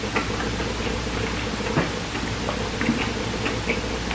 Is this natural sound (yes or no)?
yes